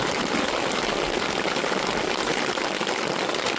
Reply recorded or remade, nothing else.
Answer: recorded